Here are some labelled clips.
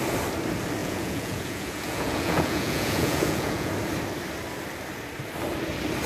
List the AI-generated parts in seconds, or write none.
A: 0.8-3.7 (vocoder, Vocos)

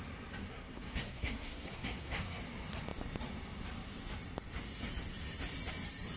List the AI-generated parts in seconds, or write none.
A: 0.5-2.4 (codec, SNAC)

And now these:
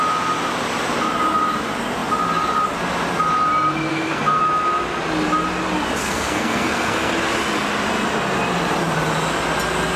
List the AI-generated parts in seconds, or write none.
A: 3.9-4.4 (codec, SNAC); 6.0-7.1

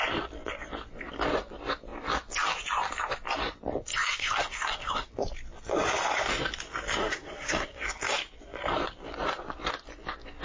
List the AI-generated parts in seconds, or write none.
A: 3.9-5.1 (codec, SNAC); 7.0-7.8

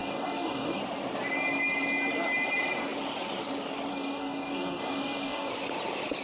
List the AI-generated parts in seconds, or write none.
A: 0.0-0.8 (codec, DAC); 3.9-5.5

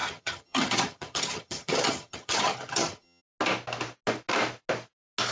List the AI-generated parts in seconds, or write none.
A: 0.0-3.2 (vocoder, HiFi-GAN)

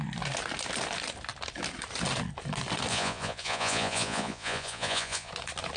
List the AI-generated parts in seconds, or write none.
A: 2.9-5.3 (vocoder, Vocos)